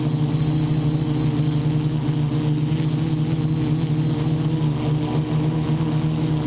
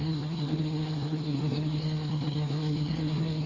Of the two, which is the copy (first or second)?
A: second